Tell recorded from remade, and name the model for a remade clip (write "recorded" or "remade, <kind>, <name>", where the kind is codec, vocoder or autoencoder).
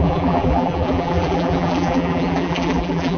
remade, vocoder, BigVGAN v2